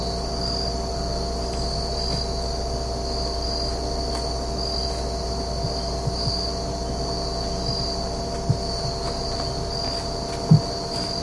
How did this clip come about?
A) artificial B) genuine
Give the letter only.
B